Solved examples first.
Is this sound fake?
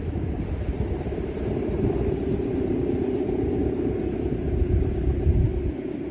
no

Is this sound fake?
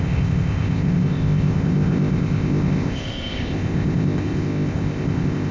yes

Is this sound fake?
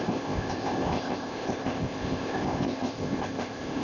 yes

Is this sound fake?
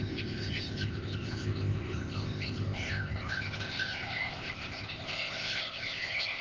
yes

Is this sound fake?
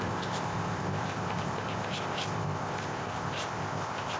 yes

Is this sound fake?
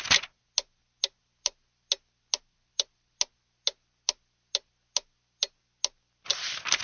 no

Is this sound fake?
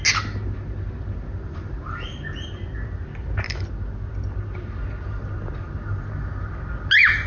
no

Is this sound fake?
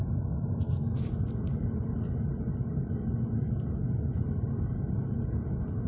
no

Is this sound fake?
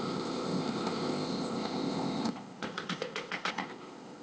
yes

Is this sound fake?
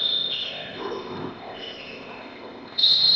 yes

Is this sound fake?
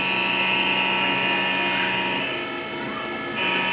no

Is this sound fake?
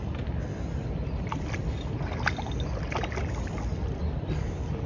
no